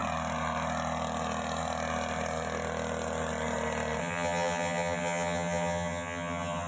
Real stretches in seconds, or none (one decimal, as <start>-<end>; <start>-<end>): 0.0-4.0